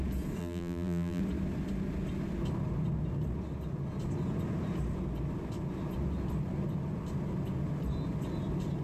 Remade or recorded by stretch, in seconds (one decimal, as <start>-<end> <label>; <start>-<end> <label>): 0.0-0.4 recorded; 0.4-1.2 remade; 1.2-8.8 recorded